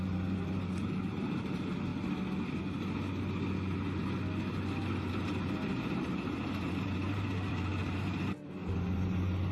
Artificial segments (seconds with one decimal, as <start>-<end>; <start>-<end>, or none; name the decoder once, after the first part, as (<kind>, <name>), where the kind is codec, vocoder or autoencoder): 0.0-1.9 (vocoder, BigVGAN v2); 5.1-9.5